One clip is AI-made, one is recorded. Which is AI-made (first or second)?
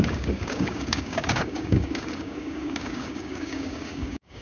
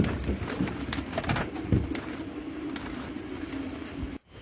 first